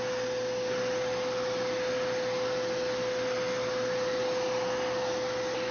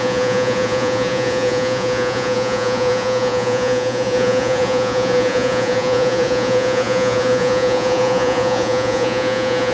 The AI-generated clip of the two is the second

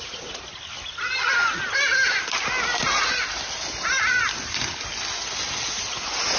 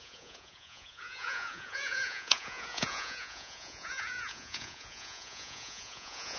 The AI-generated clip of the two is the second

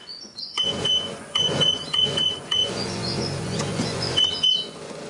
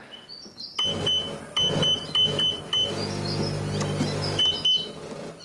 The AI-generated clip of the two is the first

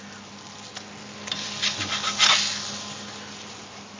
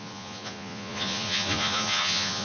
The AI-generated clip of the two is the second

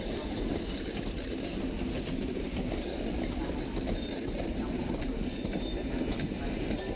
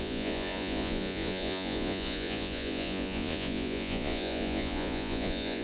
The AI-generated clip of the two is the second